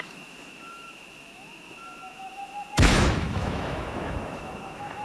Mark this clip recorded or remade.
remade